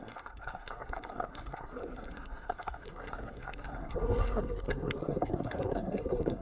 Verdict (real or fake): fake